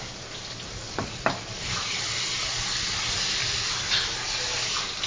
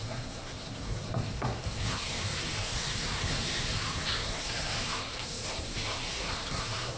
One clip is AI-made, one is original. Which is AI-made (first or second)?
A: second